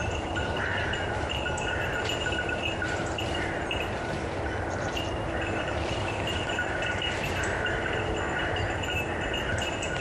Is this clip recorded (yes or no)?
no